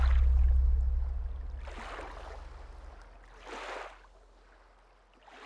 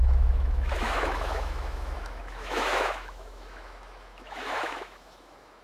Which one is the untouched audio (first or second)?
first